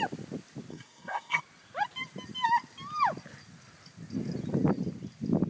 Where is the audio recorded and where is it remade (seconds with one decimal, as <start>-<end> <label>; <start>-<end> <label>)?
0.0-0.7 recorded; 0.7-1.4 remade; 1.4-5.5 recorded